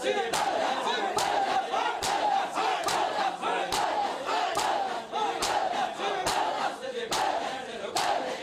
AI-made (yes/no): yes